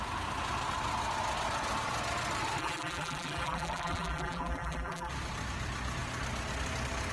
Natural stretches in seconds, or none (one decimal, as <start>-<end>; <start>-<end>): 0.0-2.6; 5.1-7.1